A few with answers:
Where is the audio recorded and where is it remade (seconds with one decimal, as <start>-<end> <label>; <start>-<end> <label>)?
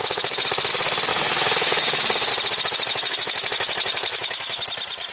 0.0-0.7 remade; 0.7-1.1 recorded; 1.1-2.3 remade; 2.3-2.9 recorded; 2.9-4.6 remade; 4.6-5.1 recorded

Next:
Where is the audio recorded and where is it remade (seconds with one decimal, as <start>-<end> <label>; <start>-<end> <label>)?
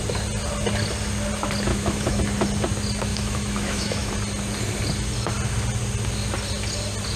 0.0-1.7 recorded; 1.7-2.2 remade; 2.2-3.1 recorded; 3.1-4.1 remade; 4.1-7.2 recorded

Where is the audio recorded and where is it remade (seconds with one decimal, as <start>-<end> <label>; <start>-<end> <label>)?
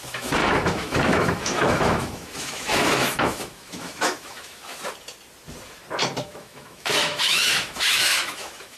0.0-4.7 remade; 4.7-6.2 recorded; 6.2-8.8 remade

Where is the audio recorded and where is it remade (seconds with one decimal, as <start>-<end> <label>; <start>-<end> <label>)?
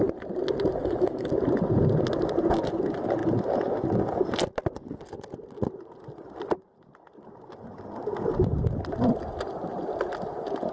0.0-0.8 recorded; 0.8-1.3 remade; 1.3-10.7 recorded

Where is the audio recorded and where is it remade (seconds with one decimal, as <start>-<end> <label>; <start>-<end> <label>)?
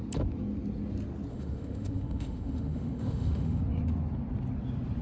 0.0-1.3 recorded; 1.3-3.6 remade; 3.6-5.0 recorded